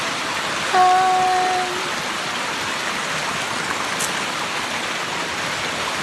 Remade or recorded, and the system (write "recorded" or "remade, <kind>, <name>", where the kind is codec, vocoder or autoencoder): recorded